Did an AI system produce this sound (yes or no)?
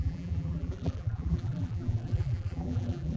yes